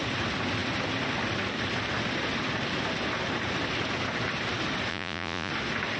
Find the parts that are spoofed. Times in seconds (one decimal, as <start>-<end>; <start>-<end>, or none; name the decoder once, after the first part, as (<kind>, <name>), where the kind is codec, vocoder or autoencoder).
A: 4.9-5.5 (vocoder, Vocos)